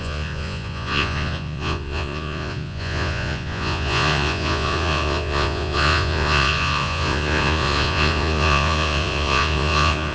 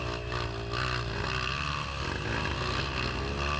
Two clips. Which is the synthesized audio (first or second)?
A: first